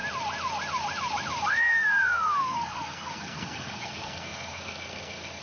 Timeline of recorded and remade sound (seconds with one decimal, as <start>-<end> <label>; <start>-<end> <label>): 0.0-1.5 recorded; 1.5-5.4 remade